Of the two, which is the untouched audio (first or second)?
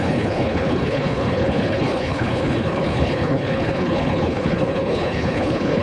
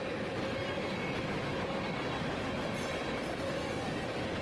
second